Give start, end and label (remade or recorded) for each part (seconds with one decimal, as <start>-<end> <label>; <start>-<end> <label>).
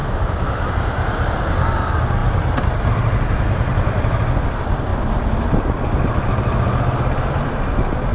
0.0-0.7 remade; 0.7-8.1 recorded